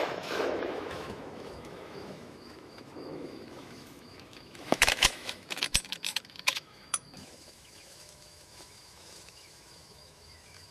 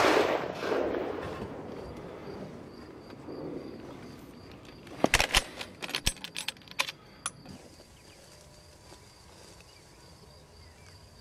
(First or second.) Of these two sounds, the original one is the second